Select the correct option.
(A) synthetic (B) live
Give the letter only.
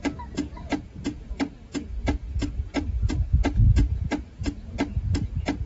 A